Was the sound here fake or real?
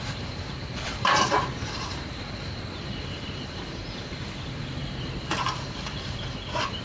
fake